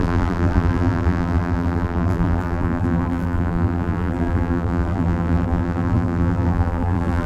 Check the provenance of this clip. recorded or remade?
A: remade